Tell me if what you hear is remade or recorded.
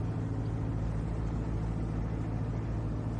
recorded